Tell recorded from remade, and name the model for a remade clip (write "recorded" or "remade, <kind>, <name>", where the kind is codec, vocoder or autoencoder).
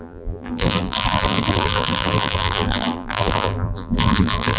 remade, vocoder, BigVGAN v2